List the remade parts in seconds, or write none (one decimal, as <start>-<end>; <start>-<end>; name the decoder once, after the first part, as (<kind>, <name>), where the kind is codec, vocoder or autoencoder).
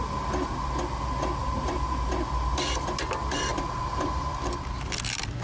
1.4-2.1 (vocoder, BigVGAN v2); 3.5-4.8